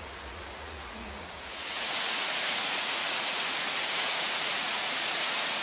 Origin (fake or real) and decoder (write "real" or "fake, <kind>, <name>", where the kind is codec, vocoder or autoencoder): fake, vocoder, Vocos